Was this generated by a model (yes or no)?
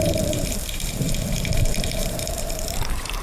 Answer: yes